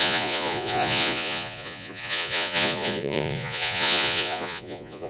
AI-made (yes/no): yes